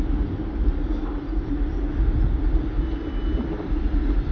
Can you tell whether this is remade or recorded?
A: recorded